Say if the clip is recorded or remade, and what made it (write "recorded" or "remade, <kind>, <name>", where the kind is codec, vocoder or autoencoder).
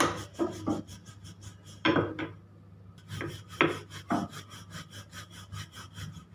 recorded